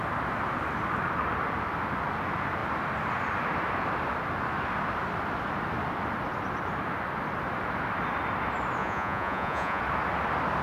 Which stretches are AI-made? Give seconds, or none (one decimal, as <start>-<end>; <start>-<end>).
8.8-9.8